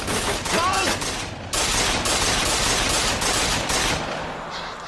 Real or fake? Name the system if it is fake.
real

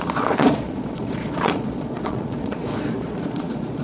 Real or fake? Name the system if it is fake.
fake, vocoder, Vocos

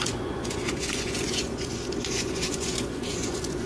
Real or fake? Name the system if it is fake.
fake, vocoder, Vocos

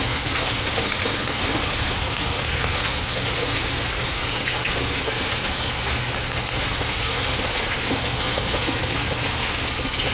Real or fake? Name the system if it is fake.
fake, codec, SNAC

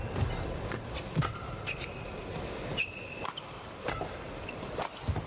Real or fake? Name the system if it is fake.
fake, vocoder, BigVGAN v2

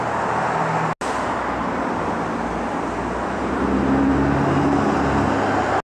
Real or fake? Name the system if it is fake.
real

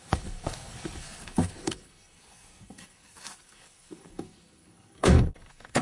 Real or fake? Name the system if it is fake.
fake, codec, SNAC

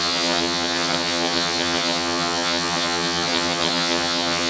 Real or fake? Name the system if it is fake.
fake, vocoder, HiFi-GAN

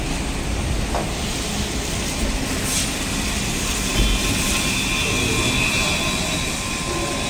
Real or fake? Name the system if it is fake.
real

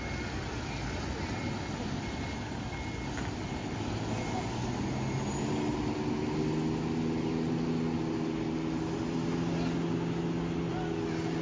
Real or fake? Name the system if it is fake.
real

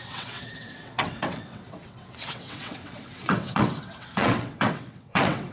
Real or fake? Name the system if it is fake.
fake, vocoder, WaveNeXt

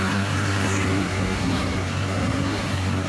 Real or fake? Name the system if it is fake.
fake, codec, SNAC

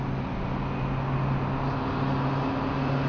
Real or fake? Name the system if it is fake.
real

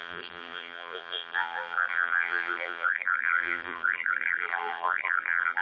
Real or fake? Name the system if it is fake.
fake, vocoder, BigVGAN v2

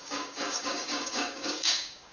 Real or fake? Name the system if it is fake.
fake, codec, DAC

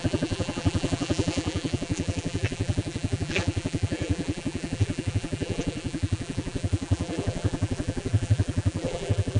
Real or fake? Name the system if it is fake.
fake, vocoder, BigVGAN v2